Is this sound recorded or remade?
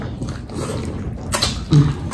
recorded